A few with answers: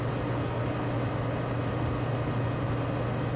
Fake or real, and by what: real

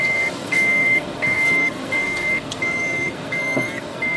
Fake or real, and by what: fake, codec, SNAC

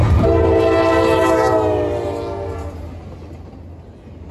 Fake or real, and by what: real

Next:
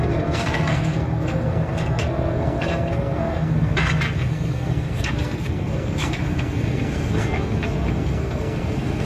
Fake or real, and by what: fake, codec, SNAC